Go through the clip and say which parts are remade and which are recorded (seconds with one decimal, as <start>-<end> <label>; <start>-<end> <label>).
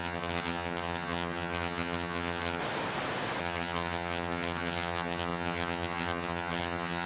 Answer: 0.0-2.6 remade; 2.6-3.4 recorded; 3.4-7.1 remade